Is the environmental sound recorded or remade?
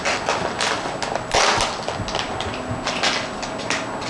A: recorded